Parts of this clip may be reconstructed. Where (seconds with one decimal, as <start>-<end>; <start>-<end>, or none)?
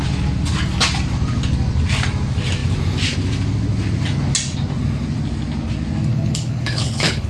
6.1-7.3